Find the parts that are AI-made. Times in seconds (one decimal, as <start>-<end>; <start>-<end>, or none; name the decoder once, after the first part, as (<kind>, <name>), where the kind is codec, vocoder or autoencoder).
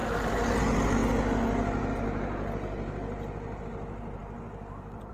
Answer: 0.0-0.6 (vocoder, BigVGAN v2)